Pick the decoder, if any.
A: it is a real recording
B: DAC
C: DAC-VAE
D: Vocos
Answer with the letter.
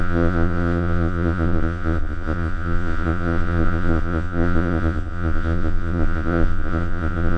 D